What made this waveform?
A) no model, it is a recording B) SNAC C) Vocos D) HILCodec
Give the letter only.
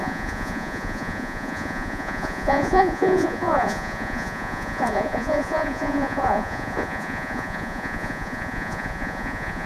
C